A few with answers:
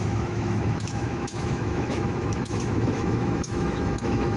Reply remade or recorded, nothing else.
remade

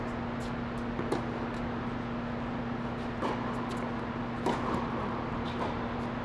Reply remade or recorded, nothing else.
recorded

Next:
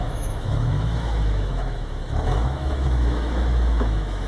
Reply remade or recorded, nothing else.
remade